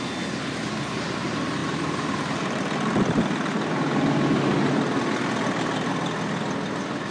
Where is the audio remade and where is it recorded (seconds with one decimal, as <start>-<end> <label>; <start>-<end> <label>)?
0.0-7.1 recorded